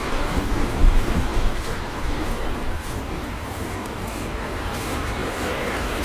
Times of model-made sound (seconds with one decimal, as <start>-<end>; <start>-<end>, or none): 0.0-6.0